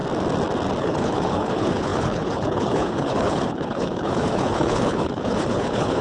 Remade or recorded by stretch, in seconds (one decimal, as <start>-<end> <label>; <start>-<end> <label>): 0.0-0.8 recorded; 0.8-6.0 remade